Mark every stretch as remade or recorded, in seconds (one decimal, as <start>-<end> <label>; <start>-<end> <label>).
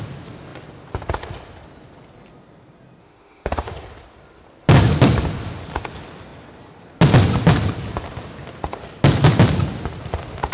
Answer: 0.0-3.0 recorded; 3.0-3.7 remade; 3.7-10.5 recorded